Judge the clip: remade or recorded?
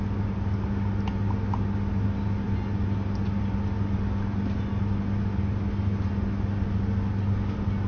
recorded